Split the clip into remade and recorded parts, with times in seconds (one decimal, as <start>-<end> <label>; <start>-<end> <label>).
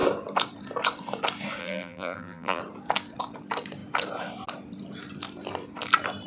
0.0-1.6 recorded; 1.6-2.6 remade; 2.6-6.3 recorded